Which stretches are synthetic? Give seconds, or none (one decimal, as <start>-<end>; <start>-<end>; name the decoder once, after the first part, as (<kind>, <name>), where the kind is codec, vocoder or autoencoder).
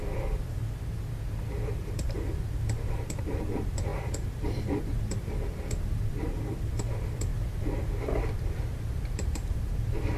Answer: 0.0-0.6 (vocoder, BigVGAN v2); 1.7-7.3; 9.1-10.2